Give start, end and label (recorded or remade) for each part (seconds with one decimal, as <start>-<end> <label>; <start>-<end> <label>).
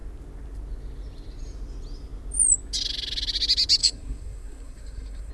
0.0-3.8 recorded; 3.8-5.3 remade